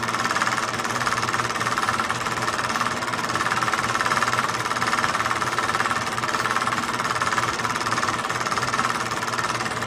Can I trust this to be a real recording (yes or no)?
no